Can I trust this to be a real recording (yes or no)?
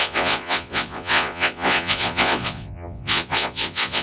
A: no